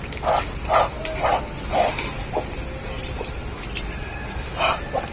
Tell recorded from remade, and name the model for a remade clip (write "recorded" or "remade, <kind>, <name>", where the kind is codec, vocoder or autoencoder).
recorded